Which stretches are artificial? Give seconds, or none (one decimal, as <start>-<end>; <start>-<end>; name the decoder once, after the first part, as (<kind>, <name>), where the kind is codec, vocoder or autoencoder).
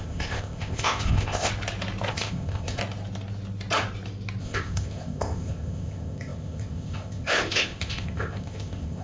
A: 0.0-1.5 (codec, ZipCodec); 2.1-2.8; 4.4-9.0